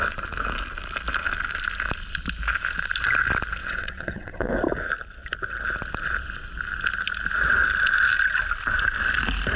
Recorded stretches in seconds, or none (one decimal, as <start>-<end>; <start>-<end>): 0.0-3.6; 4.5-9.6